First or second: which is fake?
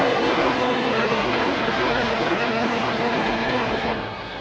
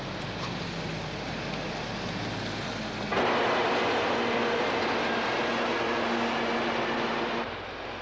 first